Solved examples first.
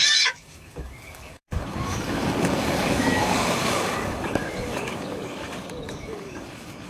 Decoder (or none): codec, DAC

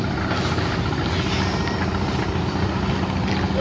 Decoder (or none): none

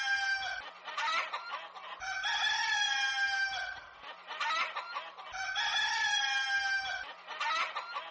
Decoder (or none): none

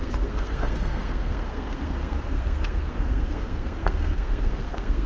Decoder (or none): codec, SNAC